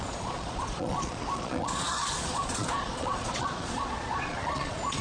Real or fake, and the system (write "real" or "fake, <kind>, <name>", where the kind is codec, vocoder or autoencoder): fake, vocoder, Vocos